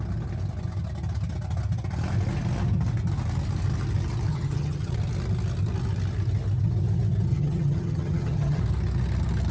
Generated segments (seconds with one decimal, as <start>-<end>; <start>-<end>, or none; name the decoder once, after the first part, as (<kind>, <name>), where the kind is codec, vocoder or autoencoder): 4.3-4.9 (vocoder, HiFi-GAN); 7.3-8.6